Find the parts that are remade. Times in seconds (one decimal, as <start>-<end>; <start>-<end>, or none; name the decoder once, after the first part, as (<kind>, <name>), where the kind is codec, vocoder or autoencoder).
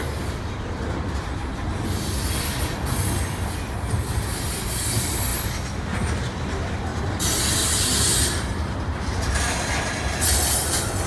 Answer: none